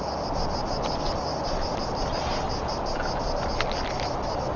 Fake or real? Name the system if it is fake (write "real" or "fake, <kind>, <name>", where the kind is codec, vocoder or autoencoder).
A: real